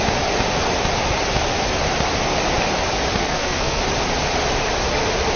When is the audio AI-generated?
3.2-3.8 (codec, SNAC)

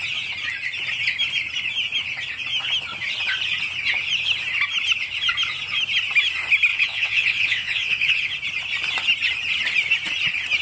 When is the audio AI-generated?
6.7-8.3 (vocoder, WaveNeXt)

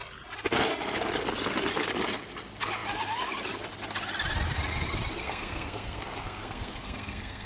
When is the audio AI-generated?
5.2-7.5 (codec, SNAC)

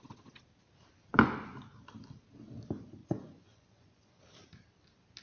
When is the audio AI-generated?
3.0-4.2 (vocoder, Vocos)

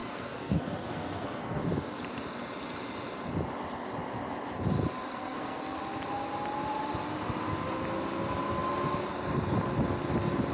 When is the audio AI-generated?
0.0-1.6 (codec, SNAC); 5.1-5.8